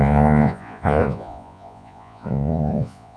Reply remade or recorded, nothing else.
remade